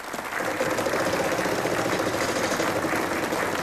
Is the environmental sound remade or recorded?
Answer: recorded